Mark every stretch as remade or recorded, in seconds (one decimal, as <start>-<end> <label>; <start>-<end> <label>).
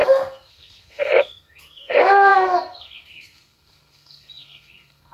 0.0-5.1 remade